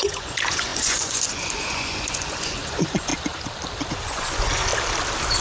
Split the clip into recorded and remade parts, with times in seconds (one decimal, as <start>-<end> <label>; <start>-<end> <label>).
0.0-3.1 remade; 3.1-3.9 recorded; 3.9-4.7 remade; 4.7-5.4 recorded